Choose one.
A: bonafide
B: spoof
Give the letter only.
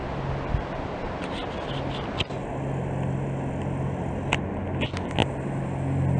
A